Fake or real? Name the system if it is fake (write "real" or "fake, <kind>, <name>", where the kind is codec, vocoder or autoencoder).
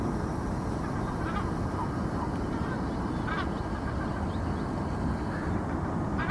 real